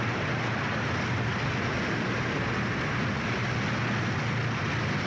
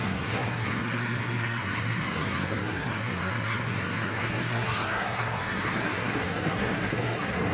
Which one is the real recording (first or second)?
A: first